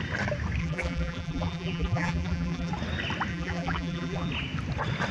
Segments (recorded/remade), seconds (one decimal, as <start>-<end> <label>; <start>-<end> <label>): 0.0-0.6 recorded; 0.6-2.7 remade; 2.7-3.3 recorded; 3.3-4.3 remade; 4.3-5.1 recorded